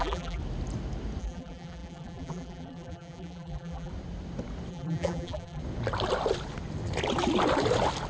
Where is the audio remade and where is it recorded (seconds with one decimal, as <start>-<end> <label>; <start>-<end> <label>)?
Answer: 0.0-0.4 remade; 0.4-1.2 recorded; 1.2-3.9 remade; 3.9-4.7 recorded; 4.7-5.6 remade; 5.6-8.1 recorded